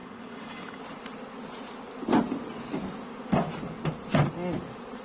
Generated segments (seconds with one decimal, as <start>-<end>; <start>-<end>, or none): 0.0-0.8

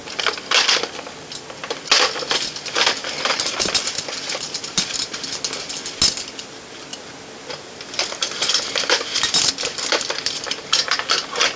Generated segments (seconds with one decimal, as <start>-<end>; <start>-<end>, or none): none

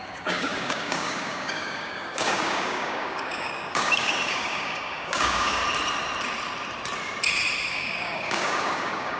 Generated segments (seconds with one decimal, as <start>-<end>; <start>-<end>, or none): 0.0-5.6; 7.7-9.2

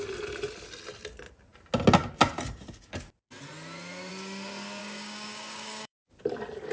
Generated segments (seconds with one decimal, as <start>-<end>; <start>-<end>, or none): 4.8-6.1

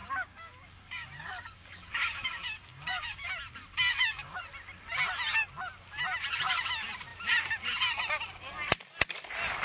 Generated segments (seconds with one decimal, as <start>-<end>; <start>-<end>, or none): 0.0-3.3; 3.9-4.4

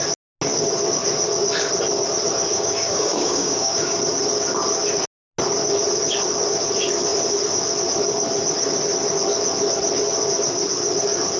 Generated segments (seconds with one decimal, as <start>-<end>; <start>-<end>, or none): 2.5-4.0

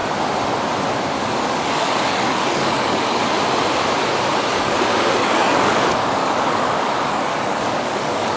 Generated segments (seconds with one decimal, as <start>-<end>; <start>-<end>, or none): 1.4-3.2; 4.5-8.4

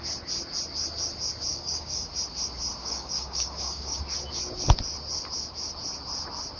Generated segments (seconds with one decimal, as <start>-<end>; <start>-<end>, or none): 1.5-2.1; 2.8-4.0